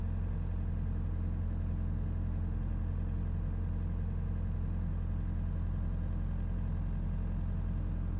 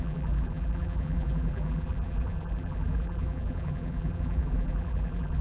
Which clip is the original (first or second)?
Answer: first